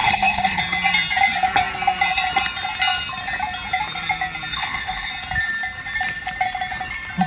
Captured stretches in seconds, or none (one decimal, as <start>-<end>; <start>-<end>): 0.6-4.5; 5.1-7.3